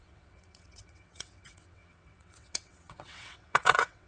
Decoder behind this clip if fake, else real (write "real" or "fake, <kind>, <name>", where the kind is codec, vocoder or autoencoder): fake, vocoder, WaveNeXt